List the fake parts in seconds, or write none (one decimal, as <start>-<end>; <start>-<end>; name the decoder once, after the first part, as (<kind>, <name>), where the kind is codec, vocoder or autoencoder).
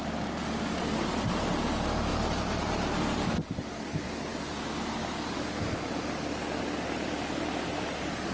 none